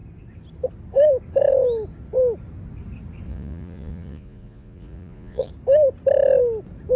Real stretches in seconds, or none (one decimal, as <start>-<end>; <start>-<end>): 0.0-3.3; 5.5-7.0